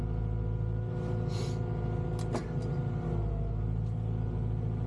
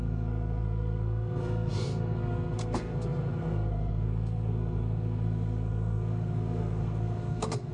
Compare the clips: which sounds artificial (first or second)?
second